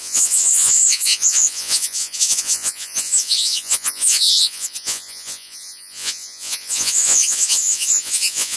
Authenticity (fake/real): fake